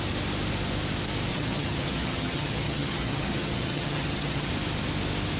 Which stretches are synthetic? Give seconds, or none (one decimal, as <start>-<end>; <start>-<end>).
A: 1.3-4.5